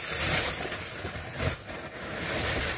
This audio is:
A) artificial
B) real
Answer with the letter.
B